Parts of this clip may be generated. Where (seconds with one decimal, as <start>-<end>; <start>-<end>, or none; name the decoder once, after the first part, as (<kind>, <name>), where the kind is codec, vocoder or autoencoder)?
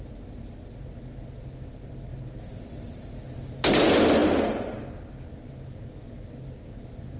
none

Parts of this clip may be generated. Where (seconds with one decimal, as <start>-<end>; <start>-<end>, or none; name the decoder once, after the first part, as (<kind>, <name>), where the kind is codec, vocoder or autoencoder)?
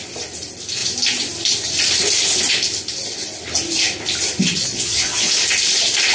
4.6-5.3 (vocoder, Vocos)